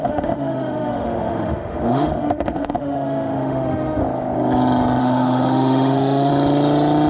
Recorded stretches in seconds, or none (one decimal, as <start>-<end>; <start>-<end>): 4.0-5.0; 6.3-7.1